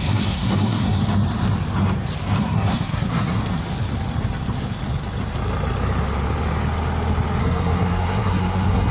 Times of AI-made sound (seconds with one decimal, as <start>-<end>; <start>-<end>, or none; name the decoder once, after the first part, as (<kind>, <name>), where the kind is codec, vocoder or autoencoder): 0.0-1.0 (codec, SNAC); 2.4-3.4; 7.4-8.9